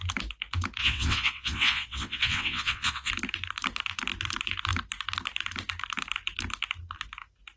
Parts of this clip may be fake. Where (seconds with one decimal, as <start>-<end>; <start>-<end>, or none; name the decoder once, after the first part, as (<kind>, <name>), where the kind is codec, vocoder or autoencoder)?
0.8-3.1 (vocoder, WaveNeXt)